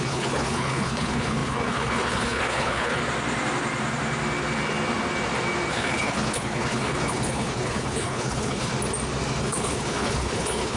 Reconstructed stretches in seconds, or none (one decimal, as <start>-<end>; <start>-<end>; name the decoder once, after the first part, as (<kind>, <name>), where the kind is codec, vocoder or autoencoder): 0.0-3.0 (codec, HILCodec); 5.7-8.7; 9.4-10.8

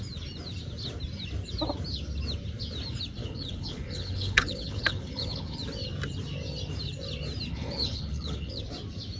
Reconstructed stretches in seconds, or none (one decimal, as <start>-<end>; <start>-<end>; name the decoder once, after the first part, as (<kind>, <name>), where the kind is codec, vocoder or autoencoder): 3.2-5.6 (codec, HILCodec); 7.5-8.6